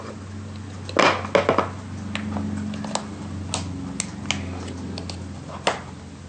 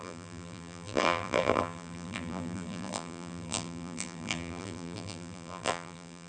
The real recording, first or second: first